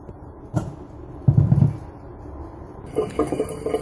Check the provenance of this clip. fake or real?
real